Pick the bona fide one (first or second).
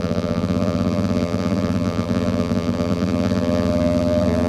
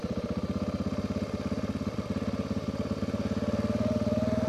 second